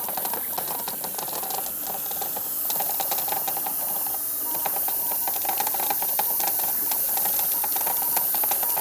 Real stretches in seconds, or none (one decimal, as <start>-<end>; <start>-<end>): 0.0-8.8